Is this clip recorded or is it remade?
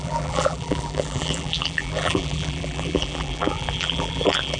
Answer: remade